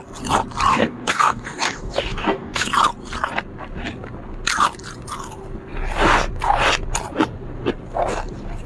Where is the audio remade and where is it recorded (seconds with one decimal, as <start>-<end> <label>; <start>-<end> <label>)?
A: 0.0-0.7 recorded; 0.7-2.7 remade; 2.7-8.7 recorded